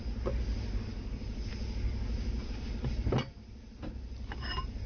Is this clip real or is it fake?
real